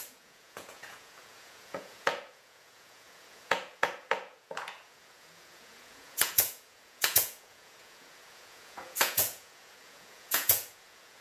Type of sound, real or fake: fake